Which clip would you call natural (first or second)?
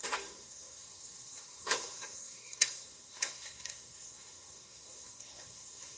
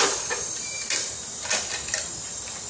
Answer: second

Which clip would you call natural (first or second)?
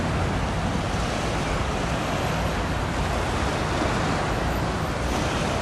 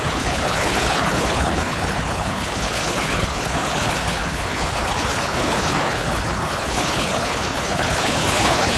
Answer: first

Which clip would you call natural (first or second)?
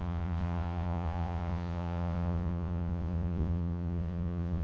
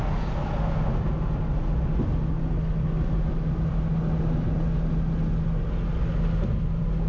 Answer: second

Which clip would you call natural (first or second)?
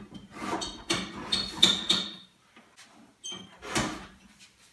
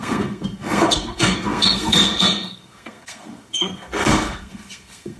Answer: first